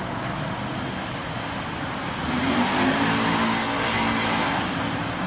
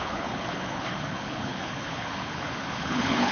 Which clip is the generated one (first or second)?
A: second